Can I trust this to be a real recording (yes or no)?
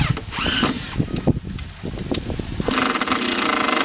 yes